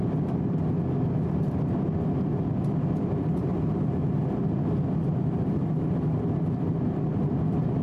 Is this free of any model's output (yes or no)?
yes